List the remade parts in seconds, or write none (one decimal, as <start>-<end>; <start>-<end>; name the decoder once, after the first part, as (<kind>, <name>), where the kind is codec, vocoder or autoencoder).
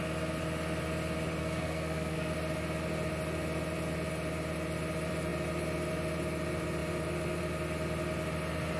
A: 1.4-2.3 (codec, SNAC)